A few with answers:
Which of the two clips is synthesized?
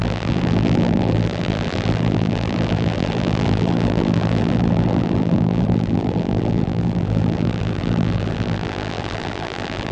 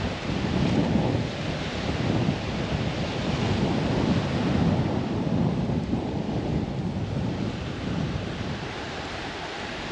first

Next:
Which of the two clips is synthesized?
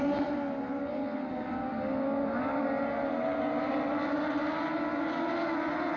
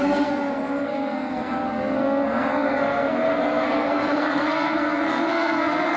second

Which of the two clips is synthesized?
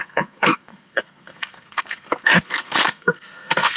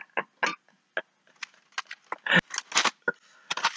first